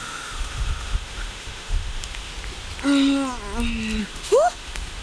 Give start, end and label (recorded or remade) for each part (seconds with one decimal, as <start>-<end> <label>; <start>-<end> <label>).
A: 0.0-2.3 remade; 2.3-4.0 recorded; 4.0-5.0 remade